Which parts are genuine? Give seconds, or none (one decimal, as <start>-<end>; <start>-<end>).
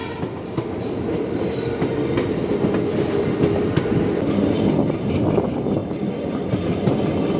0.0-7.4